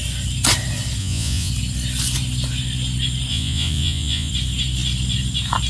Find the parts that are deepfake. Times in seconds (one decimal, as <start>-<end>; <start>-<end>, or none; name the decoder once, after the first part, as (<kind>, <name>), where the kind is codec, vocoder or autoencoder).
1.0-1.5 (vocoder, Vocos); 3.3-4.3